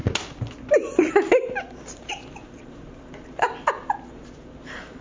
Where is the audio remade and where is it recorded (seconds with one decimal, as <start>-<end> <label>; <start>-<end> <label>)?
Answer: 0.0-2.4 recorded; 2.4-3.5 remade; 3.5-5.0 recorded